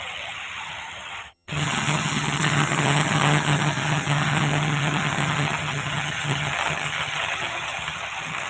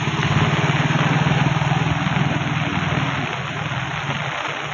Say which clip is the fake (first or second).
first